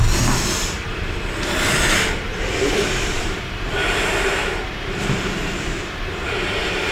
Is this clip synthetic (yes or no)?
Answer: yes